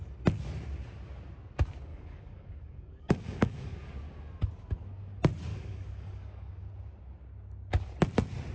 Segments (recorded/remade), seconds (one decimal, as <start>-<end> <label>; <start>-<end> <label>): 0.0-1.9 recorded; 1.9-4.0 remade; 4.0-5.5 recorded; 5.5-6.6 remade; 6.6-8.5 recorded